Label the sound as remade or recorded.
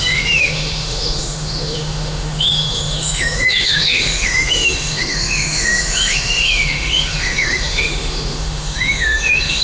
remade